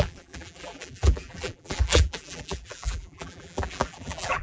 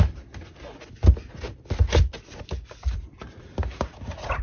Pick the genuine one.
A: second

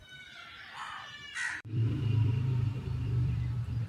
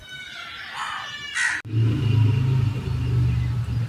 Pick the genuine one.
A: second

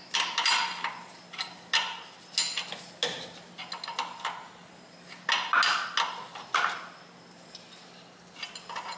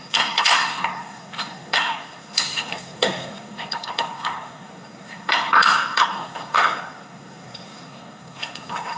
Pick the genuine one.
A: first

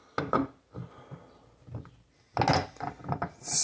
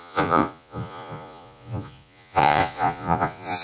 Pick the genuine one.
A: first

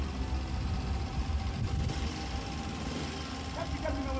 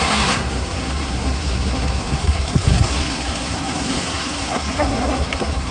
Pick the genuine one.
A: first